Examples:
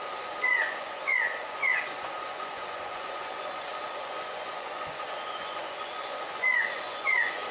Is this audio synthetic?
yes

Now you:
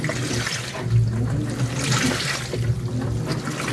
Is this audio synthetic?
no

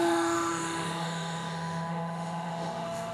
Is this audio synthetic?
yes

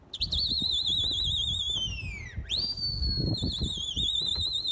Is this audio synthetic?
no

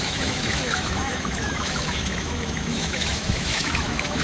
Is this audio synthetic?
yes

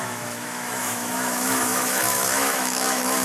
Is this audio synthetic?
yes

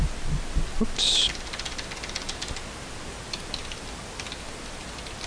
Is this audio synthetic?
no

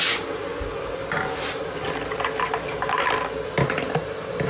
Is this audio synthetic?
no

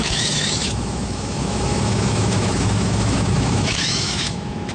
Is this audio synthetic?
yes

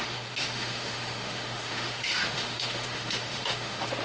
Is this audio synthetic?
yes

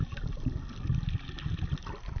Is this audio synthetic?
no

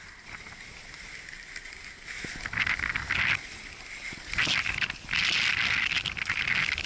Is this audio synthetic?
no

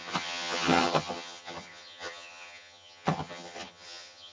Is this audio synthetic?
yes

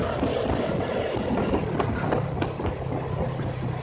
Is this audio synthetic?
no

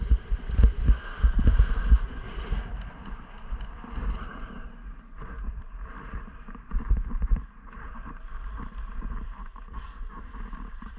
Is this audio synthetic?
yes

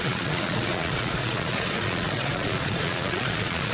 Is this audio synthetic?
yes